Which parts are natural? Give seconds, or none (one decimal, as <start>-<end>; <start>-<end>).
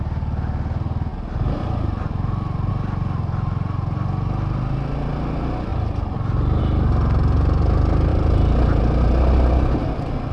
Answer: 0.0-5.7; 6.6-8.1; 8.8-10.3